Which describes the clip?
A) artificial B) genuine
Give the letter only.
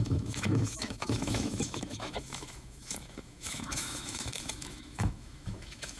A